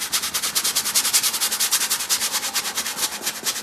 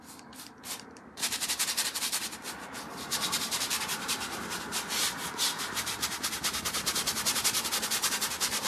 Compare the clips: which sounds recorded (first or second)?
first